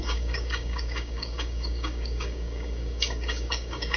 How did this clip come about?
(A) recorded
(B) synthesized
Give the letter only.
B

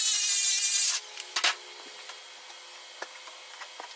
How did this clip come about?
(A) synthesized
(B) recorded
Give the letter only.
B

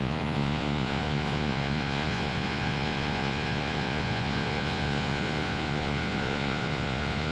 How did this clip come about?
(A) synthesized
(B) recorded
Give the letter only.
A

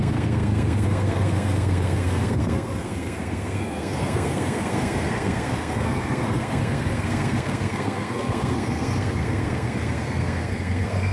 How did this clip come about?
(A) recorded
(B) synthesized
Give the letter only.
B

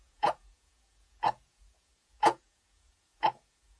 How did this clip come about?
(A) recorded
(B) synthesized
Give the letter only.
B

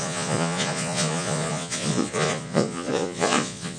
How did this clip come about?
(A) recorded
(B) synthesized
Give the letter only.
B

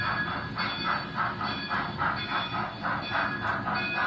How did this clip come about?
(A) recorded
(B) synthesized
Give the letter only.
A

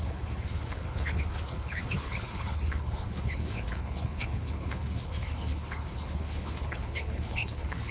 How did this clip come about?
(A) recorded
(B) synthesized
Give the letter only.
B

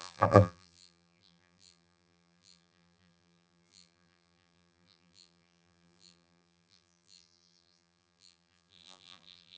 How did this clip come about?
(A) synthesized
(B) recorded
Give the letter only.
A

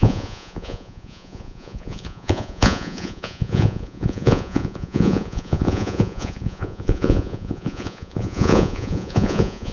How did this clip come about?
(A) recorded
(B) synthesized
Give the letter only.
B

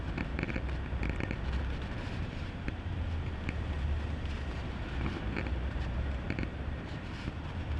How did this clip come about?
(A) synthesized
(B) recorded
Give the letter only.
A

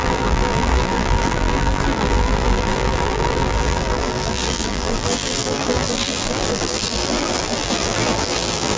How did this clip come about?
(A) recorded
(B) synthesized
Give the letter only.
B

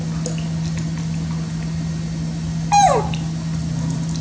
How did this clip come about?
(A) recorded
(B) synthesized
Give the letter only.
A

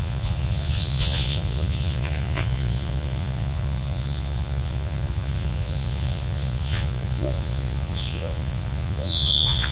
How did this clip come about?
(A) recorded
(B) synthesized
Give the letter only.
B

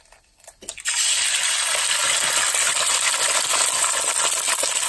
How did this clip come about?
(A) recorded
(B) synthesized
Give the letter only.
A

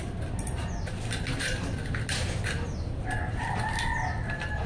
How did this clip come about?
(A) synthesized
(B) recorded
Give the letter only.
B